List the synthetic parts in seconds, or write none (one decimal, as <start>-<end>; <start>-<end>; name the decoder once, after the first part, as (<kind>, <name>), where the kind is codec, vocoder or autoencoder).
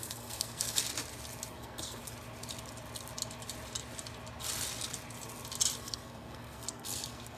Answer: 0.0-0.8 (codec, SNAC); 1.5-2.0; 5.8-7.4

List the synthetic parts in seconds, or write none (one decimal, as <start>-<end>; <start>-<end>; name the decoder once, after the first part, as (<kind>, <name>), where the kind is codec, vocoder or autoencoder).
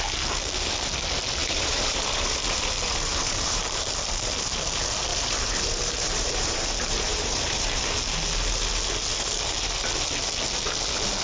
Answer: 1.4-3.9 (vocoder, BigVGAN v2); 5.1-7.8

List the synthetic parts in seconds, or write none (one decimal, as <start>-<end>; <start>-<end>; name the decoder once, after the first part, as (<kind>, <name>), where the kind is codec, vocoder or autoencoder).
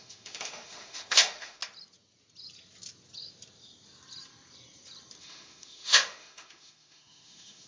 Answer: 0.0-1.6 (autoencoder, DAC-VAE); 5.2-7.7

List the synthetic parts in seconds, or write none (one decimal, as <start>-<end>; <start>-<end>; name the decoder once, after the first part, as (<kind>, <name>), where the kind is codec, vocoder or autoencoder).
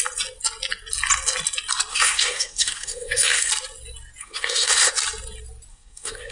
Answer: 1.9-3.5 (codec, SNAC); 4.2-4.9; 5.7-6.3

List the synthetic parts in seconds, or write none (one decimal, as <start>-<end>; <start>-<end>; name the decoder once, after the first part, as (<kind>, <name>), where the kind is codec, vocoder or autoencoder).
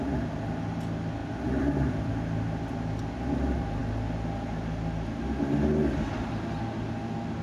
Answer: 1.2-2.6 (vocoder, BigVGAN v2)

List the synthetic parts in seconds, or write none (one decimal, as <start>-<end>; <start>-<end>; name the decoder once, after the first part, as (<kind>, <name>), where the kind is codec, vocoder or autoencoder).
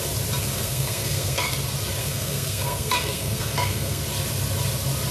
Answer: 0.4-1.5 (codec, SNAC); 2.0-4.0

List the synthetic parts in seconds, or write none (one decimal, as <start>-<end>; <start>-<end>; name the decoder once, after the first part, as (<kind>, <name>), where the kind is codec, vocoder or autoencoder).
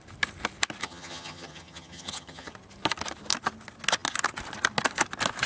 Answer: 0.8-2.5 (vocoder, HiFi-GAN)